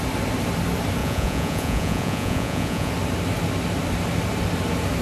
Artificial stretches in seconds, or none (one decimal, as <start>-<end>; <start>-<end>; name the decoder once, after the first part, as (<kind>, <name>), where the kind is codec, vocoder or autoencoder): 1.0-2.9 (vocoder, Vocos)